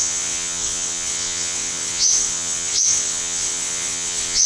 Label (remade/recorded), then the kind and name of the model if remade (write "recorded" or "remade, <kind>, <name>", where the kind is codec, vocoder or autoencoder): remade, vocoder, WaveNeXt